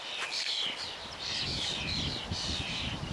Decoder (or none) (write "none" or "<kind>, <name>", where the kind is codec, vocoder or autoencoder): vocoder, BigVGAN v2